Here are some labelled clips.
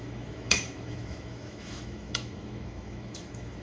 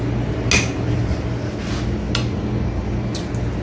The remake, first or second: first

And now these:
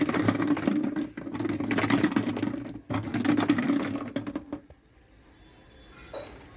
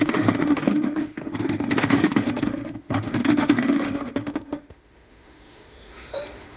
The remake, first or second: second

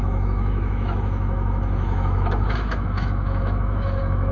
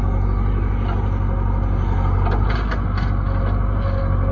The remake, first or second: first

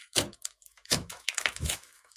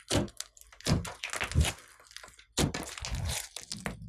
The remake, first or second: first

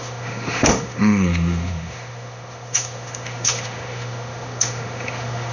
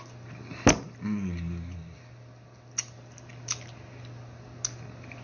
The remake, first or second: first